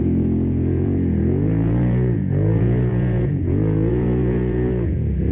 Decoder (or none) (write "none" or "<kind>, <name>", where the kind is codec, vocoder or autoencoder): vocoder, Vocos